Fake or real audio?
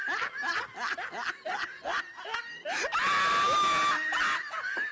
real